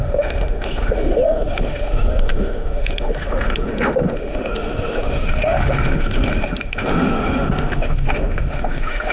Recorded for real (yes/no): no